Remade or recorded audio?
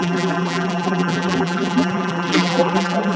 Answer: remade